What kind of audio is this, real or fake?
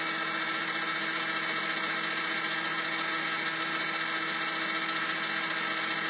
real